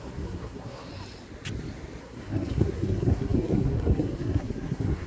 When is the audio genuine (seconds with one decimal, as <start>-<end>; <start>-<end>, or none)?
0.9-2.0